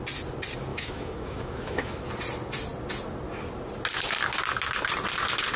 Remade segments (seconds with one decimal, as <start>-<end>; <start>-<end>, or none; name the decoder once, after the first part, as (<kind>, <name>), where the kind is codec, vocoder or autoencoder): 0.7-2.0 (autoencoder, DAC-VAE)

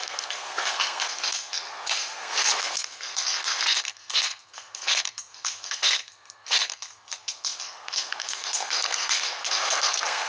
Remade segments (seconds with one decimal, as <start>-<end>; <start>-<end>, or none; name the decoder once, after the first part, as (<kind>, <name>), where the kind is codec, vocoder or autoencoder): 0.0-10.3 (codec, SNAC)

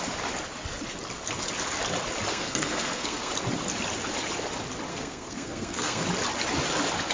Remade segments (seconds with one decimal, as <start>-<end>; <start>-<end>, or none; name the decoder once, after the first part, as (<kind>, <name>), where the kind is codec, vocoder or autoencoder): 2.3-3.3 (codec, SNAC); 4.9-6.0